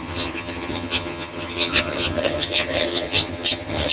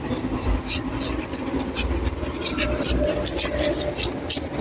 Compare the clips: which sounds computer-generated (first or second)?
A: first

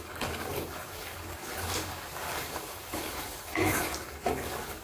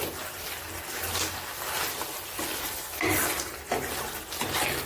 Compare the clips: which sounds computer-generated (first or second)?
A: first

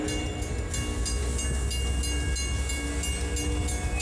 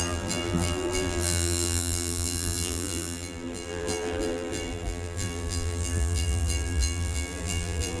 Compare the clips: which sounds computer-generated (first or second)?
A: second